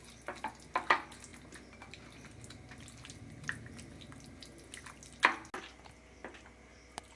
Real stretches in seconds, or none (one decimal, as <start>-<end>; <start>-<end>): 0.0-7.2